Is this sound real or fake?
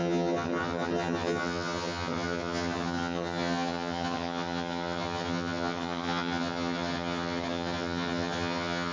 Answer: fake